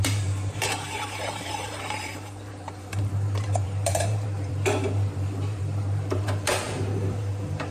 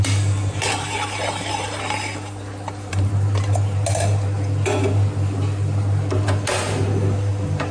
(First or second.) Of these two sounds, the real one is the second